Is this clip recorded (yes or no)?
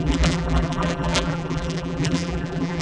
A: no